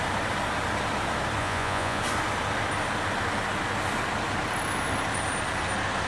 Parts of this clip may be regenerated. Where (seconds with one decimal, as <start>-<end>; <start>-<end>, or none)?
1.4-2.0